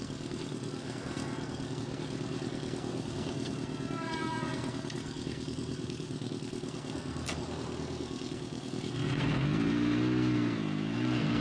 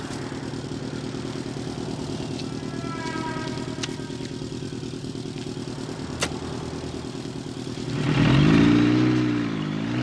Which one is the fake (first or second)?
first